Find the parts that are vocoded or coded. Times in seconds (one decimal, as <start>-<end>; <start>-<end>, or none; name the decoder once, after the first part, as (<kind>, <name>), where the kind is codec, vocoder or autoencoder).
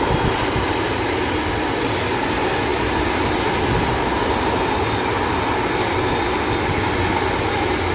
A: none